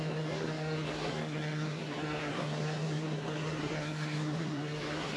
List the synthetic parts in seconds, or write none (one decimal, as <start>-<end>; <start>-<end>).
0.0-5.2